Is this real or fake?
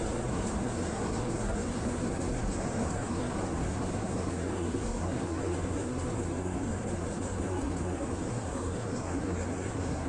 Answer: fake